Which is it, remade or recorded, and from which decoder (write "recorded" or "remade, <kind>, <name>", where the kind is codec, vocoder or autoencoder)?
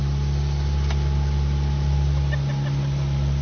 recorded